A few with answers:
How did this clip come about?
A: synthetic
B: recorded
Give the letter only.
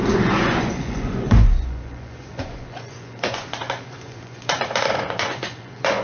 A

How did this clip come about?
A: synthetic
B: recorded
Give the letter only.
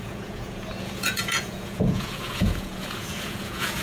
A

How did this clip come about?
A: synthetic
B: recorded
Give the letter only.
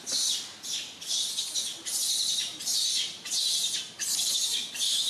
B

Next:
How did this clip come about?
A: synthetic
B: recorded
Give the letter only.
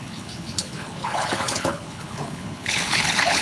A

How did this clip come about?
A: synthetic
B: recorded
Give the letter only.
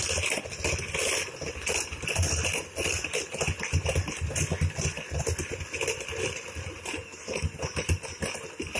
B